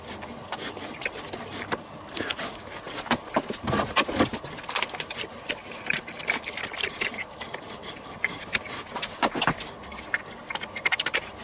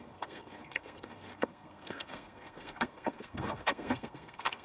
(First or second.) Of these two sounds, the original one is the first